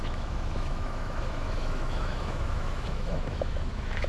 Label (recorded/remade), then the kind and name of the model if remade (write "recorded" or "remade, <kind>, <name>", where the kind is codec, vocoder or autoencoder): remade, autoencoder, DAC-VAE